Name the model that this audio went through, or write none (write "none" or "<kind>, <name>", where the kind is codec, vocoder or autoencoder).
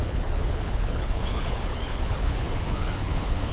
codec, HILCodec